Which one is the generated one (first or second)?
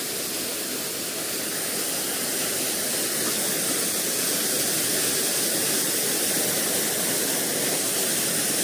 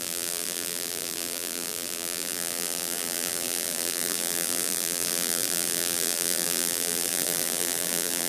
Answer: second